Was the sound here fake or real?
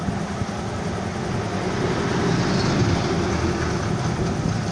real